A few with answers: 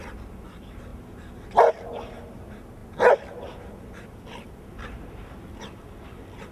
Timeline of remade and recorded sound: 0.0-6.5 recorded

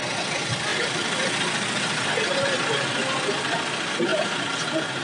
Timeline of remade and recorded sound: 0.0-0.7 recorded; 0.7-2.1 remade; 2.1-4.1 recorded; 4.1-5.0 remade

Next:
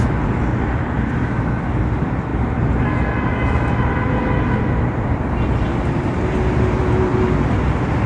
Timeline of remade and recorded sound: 0.0-2.3 recorded; 2.3-2.9 remade; 2.9-8.1 recorded